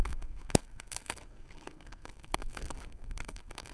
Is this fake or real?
fake